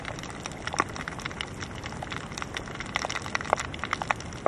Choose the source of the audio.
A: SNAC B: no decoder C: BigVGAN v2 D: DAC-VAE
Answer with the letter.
B